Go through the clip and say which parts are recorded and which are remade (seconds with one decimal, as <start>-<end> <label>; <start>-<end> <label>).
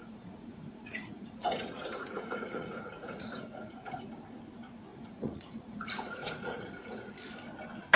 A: 0.0-4.0 remade; 4.0-4.9 recorded; 4.9-7.1 remade; 7.1-8.0 recorded